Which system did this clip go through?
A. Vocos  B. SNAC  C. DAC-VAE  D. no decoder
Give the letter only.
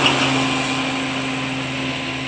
D